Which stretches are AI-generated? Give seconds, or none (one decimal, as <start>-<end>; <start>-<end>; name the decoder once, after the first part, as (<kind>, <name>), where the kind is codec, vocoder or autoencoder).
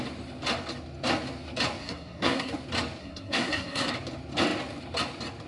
1.8-2.5 (codec, SNAC); 3.0-3.9